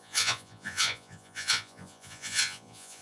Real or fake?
fake